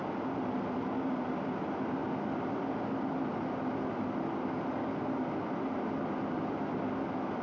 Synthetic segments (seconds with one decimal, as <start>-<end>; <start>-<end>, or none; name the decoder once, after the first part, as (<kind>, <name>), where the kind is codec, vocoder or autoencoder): none